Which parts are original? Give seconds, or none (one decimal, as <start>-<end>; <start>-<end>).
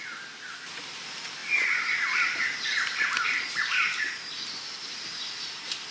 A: 0.0-5.9